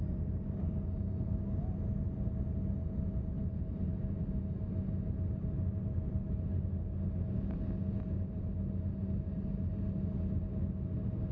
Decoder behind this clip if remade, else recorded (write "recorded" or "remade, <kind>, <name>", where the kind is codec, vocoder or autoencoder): recorded